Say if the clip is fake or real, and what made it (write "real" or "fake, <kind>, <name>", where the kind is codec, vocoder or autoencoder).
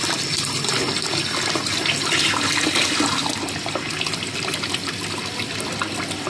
real